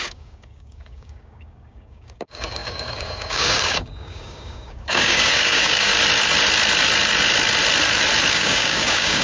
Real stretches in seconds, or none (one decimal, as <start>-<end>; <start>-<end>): 5.9-8.3